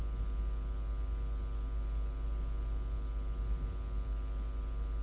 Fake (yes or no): no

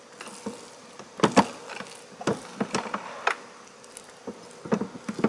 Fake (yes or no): no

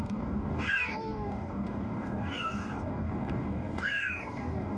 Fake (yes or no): yes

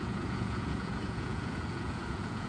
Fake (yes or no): yes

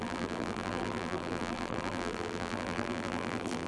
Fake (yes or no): yes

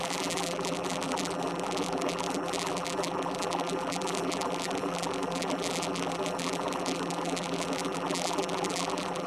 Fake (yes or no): yes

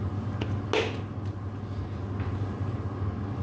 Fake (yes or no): no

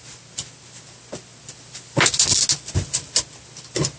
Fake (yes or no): no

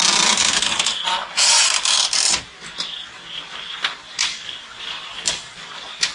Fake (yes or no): no